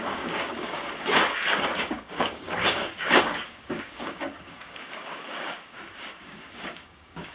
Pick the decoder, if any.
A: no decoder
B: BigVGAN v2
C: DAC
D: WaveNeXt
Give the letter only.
C